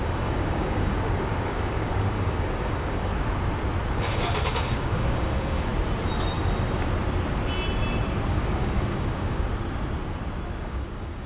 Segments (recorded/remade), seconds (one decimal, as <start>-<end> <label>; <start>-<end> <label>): 0.0-3.1 remade; 3.1-3.9 recorded; 3.9-5.7 remade; 5.7-8.3 recorded; 8.3-9.5 remade; 9.5-10.6 recorded; 10.6-11.3 remade